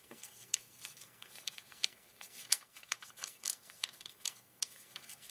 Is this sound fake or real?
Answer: fake